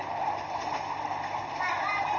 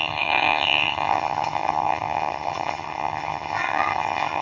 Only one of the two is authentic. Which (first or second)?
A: first